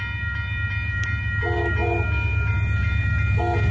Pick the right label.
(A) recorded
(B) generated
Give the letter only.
A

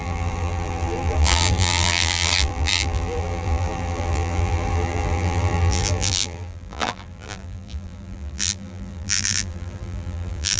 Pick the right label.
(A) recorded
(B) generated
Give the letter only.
B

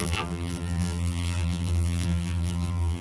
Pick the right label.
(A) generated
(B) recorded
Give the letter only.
A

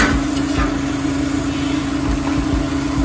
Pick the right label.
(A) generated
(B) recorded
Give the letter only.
B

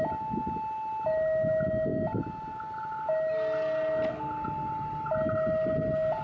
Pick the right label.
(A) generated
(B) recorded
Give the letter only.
B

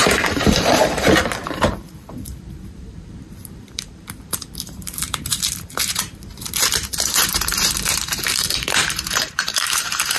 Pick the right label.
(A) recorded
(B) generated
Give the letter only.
B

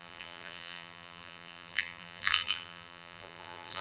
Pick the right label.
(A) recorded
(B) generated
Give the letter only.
B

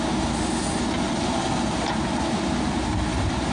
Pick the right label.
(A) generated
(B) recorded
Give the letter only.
B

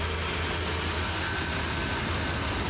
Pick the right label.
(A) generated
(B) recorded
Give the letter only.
B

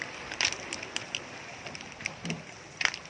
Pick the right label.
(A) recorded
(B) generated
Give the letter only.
A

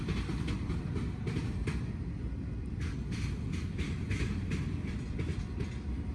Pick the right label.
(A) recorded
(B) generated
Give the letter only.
A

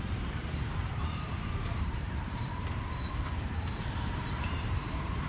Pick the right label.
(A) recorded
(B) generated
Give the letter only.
B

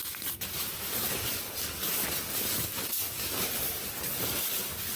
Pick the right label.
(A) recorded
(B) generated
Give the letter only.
A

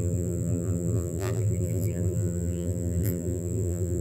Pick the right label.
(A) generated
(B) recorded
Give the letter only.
A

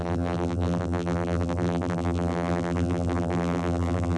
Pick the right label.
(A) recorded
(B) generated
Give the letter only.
B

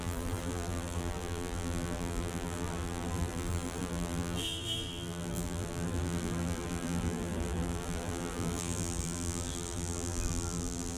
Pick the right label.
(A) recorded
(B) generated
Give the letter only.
B